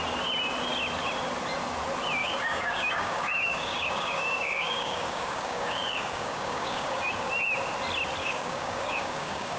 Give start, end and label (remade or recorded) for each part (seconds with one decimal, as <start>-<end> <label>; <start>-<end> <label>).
0.0-2.2 recorded; 2.2-7.3 remade; 7.3-8.2 recorded; 8.2-9.6 remade